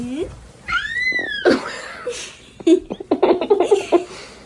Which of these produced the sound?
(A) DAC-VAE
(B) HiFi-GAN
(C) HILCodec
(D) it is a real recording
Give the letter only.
D